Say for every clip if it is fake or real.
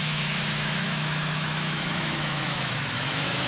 fake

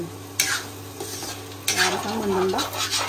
real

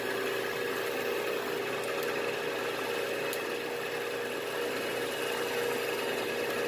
real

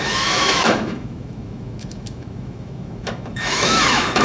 fake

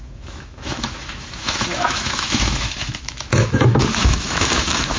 fake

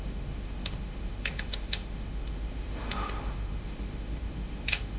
fake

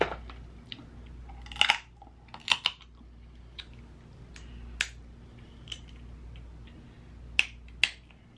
real